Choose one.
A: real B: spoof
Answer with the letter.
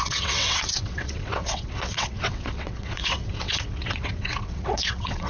B